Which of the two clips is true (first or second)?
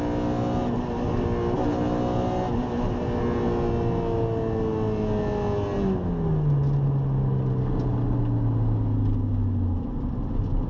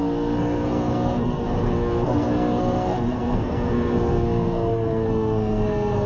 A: first